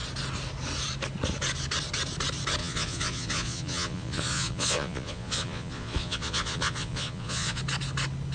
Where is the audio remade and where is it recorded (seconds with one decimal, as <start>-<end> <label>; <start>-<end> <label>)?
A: 0.0-2.6 recorded; 2.6-7.6 remade; 7.6-8.3 recorded

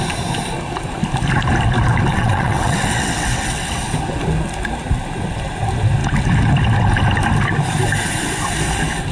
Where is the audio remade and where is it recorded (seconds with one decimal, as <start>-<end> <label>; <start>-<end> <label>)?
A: 0.0-2.1 recorded; 2.1-3.8 remade; 3.8-9.1 recorded

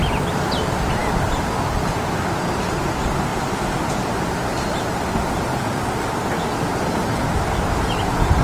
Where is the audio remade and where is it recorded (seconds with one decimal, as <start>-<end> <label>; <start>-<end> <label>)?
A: 0.0-3.3 recorded; 3.3-4.0 remade; 4.0-5.5 recorded; 5.5-7.3 remade; 7.3-8.4 recorded

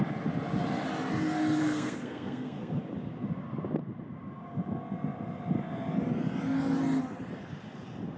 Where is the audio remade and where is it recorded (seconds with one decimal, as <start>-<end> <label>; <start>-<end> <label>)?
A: 0.0-1.6 recorded; 1.6-2.8 remade; 2.8-8.2 recorded